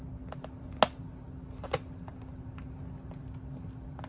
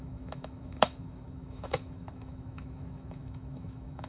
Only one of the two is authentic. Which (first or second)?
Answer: first